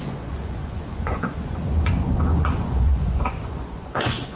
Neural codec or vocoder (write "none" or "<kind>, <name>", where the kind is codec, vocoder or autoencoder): vocoder, Vocos